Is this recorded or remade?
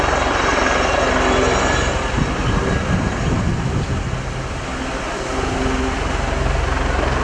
recorded